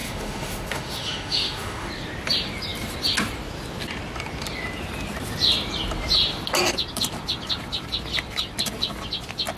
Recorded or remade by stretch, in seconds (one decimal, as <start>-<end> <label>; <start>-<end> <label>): 0.0-1.9 remade; 1.9-9.6 recorded